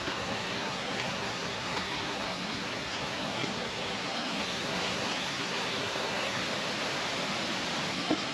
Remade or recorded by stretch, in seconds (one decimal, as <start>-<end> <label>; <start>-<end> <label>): 0.0-6.4 remade; 6.4-7.9 recorded; 7.9-8.3 remade